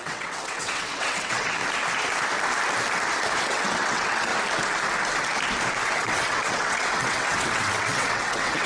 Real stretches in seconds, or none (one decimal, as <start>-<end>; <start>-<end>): 1.6-3.4; 4.3-5.9